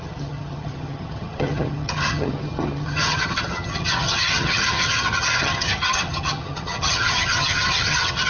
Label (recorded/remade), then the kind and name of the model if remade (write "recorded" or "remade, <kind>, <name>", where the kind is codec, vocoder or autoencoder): remade, vocoder, HiFi-GAN